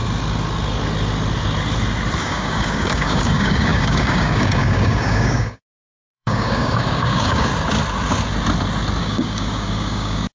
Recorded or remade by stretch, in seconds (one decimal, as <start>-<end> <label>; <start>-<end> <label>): 0.0-2.2 recorded; 2.2-7.5 remade; 7.5-9.0 recorded; 9.0-10.3 remade